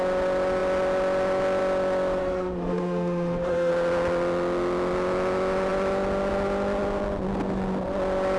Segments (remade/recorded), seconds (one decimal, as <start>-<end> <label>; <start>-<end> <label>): 0.0-2.2 recorded; 2.2-3.7 remade; 3.7-8.4 recorded